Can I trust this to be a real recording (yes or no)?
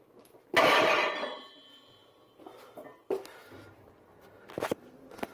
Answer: yes